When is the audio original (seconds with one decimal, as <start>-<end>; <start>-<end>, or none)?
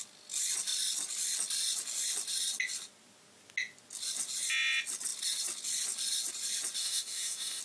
0.0-6.8